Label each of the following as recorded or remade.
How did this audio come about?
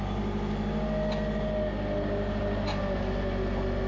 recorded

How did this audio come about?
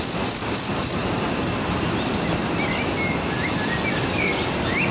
recorded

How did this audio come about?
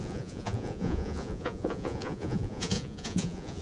remade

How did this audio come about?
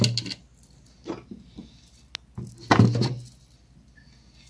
recorded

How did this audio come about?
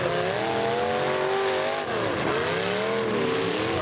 recorded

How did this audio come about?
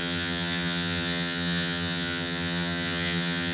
remade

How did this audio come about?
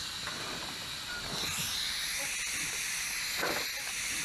recorded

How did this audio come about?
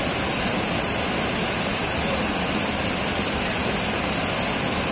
recorded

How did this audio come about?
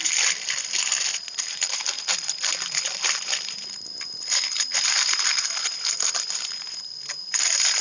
remade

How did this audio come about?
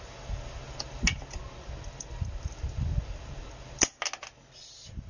recorded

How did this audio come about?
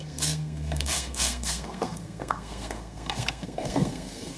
remade